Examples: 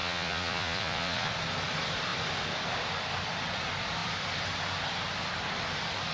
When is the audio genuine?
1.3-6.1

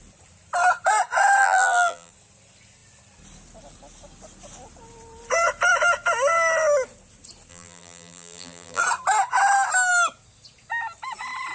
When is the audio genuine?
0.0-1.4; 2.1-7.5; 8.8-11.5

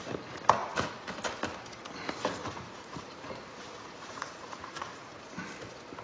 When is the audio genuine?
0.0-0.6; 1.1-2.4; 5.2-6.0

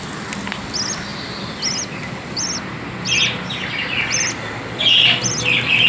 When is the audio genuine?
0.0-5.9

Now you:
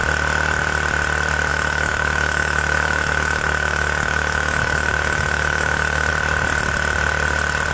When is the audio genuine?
0.0-1.5; 6.1-7.7